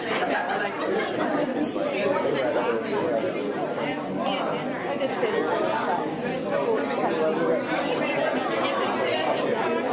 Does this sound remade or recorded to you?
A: recorded